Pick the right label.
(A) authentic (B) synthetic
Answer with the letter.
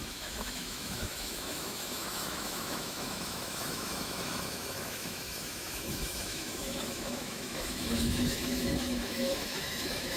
B